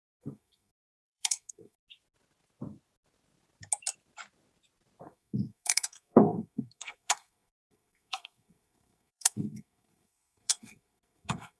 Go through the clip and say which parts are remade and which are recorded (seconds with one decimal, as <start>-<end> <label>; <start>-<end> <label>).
0.0-1.8 remade; 1.8-5.0 recorded; 5.0-11.6 remade